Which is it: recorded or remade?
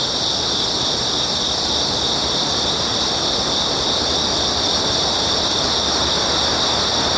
recorded